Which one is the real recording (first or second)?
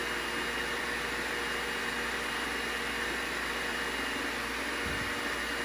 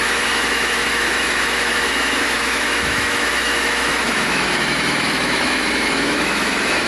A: first